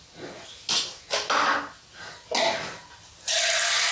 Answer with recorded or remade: recorded